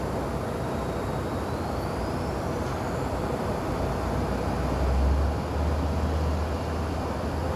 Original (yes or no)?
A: yes